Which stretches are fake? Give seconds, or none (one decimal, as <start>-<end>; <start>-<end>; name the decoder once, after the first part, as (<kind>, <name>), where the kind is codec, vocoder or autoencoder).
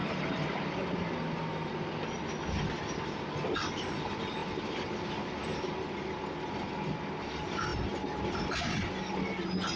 none